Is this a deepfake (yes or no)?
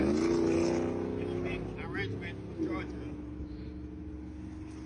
no